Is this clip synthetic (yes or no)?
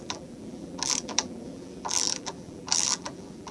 yes